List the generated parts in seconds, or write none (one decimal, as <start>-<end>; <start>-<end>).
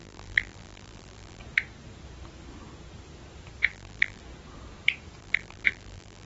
0.0-1.4; 3.7-4.2; 5.2-6.3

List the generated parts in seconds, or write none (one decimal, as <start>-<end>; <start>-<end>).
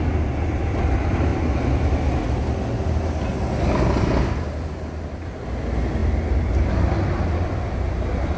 none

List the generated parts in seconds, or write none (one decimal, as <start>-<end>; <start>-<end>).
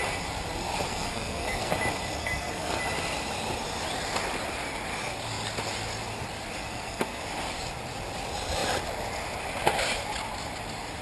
0.9-1.7; 2.2-2.8; 6.6-7.2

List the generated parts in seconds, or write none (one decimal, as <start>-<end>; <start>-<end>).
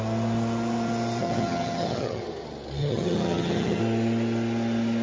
1.2-2.2; 2.8-3.8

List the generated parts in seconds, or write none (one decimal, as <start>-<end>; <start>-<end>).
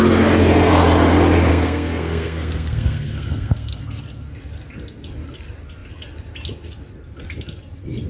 1.5-3.8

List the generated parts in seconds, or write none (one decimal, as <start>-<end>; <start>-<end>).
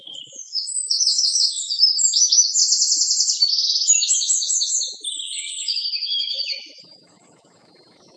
0.0-2.6; 3.5-8.2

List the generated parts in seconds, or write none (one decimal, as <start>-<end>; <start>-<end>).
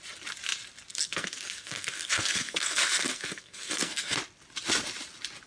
0.9-4.2